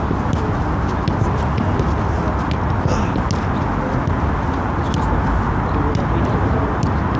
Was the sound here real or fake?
real